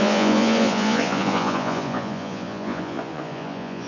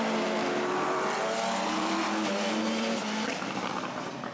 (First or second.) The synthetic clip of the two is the first